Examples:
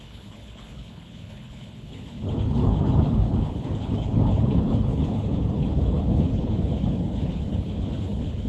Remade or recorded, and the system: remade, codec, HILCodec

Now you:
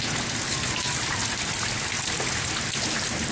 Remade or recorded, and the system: recorded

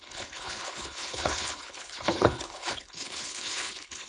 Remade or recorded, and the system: remade, codec, HILCodec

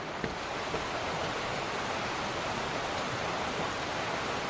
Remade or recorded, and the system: recorded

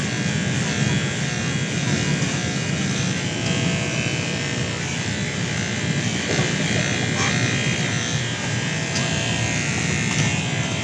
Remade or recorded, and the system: recorded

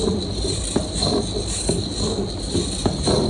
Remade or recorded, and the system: recorded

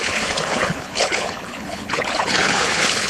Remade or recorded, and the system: remade, codec, HILCodec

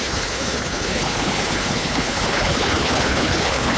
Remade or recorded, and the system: remade, codec, HILCodec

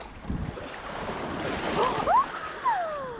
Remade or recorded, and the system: recorded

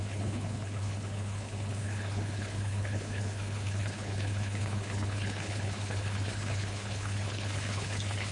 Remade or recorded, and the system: remade, codec, HILCodec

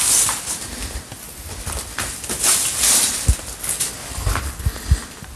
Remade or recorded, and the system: recorded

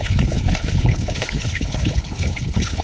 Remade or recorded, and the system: remade, codec, HILCodec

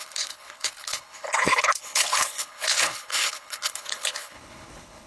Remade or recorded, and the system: remade, codec, HILCodec